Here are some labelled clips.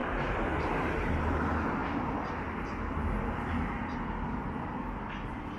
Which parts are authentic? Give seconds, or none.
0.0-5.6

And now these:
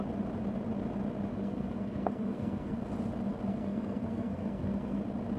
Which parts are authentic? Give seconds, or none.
0.0-1.3; 2.8-3.5; 5.0-5.4